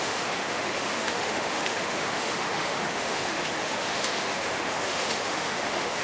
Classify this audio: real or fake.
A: fake